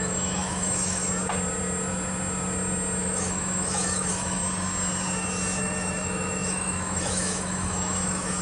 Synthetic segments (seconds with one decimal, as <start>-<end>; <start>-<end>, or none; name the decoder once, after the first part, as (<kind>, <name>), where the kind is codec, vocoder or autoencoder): 0.0-1.0 (autoencoder, DAC-VAE); 3.0-4.4; 5.6-8.4